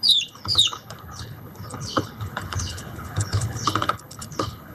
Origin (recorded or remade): remade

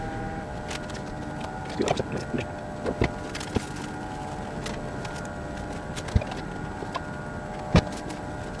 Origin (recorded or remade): recorded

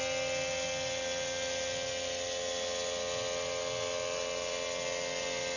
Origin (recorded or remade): recorded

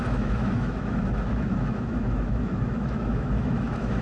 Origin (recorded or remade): remade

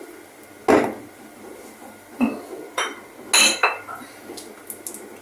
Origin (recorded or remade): recorded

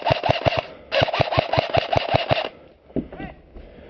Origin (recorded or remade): recorded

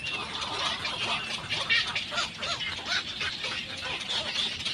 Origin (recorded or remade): recorded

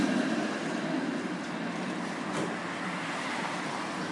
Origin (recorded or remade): recorded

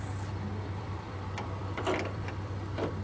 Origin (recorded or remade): remade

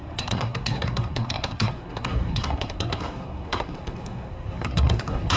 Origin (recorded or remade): remade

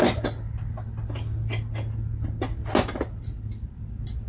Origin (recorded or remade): recorded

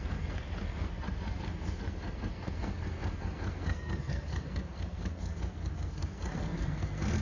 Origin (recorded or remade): remade